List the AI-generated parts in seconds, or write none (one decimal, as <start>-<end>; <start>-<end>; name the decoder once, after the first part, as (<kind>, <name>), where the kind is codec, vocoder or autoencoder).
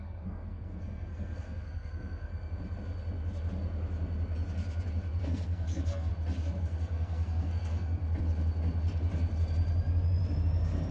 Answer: 0.0-2.3 (codec, SNAC); 5.2-6.1; 6.6-8.0